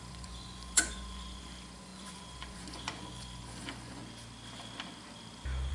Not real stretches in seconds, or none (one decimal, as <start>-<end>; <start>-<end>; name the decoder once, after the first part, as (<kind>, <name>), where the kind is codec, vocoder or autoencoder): 0.0-4.0 (vocoder, Vocos)